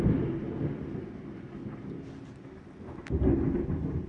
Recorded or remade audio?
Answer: recorded